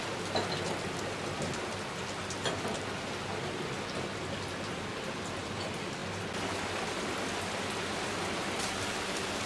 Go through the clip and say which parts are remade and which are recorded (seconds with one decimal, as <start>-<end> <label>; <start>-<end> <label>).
0.0-9.5 recorded